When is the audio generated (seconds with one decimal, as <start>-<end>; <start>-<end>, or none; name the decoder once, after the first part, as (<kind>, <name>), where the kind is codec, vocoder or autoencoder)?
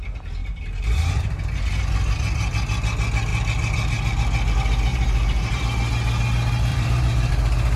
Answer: 0.4-1.3 (vocoder, BigVGAN v2); 4.9-5.6; 6.7-7.3